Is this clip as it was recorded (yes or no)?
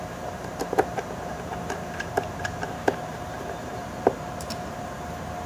no